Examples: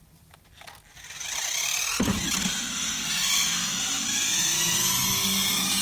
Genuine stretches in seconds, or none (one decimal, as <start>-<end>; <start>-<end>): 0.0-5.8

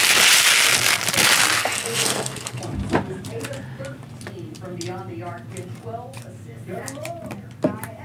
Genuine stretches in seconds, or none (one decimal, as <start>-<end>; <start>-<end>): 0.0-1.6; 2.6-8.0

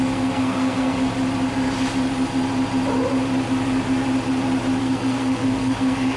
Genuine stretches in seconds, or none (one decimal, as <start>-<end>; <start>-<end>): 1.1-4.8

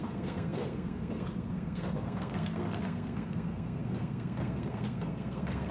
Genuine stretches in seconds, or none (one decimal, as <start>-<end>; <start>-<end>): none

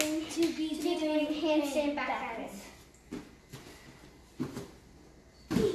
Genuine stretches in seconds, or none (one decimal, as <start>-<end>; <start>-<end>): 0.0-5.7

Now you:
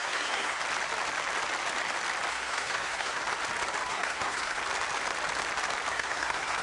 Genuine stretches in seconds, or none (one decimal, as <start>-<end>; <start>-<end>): 0.6-2.3; 3.2-3.9; 4.6-5.9

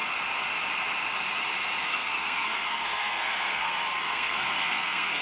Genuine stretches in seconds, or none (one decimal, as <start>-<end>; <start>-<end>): 0.0-1.9

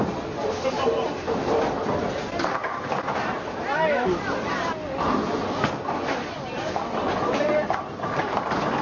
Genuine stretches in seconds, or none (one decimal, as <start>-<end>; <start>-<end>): 0.0-8.8